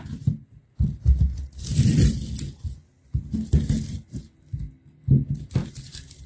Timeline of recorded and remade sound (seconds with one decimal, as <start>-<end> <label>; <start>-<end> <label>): 0.0-6.3 recorded